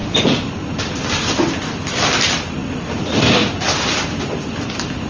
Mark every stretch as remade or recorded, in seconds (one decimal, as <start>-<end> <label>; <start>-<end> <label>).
0.0-0.8 recorded; 0.8-5.1 remade